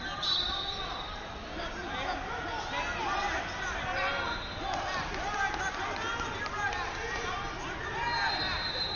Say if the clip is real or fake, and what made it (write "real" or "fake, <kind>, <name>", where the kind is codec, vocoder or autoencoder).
real